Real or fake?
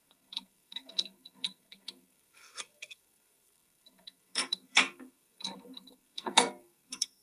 fake